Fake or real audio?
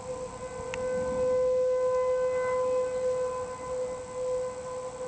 real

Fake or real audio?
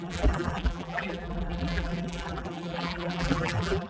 fake